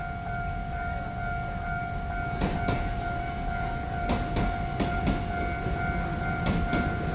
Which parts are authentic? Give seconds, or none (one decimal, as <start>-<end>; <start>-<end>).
0.0-7.1